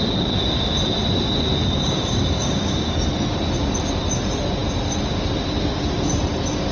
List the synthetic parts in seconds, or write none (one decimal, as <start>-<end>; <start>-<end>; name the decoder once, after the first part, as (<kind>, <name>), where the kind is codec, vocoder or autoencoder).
1.6-3.1 (codec, DAC)

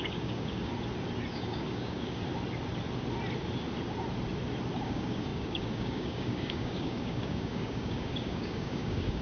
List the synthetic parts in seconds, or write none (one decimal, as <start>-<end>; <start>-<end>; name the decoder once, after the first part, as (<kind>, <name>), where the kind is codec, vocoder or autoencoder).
0.0-0.7 (codec, DAC); 1.3-2.2; 4.8-9.2